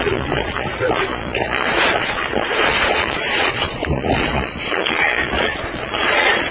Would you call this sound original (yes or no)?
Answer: no